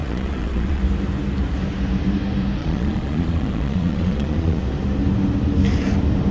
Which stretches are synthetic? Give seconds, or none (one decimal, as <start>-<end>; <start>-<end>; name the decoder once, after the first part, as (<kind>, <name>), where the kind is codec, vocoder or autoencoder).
0.0-0.8 (vocoder, Vocos); 2.6-4.6